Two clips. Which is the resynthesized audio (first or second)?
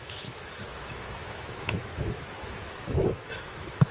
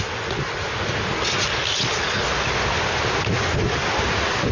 first